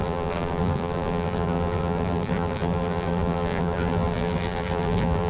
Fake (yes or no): yes